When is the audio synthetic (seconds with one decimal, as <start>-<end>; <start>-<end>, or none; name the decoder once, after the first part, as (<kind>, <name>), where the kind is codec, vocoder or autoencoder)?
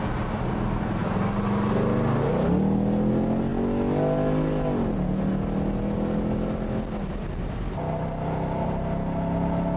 none